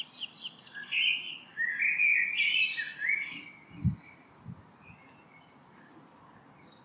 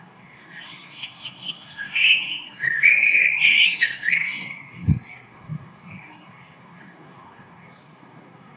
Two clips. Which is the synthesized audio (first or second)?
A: second